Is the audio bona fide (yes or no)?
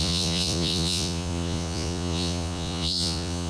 no